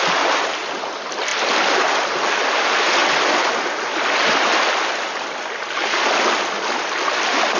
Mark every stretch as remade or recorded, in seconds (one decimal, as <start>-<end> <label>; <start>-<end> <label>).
0.0-7.6 recorded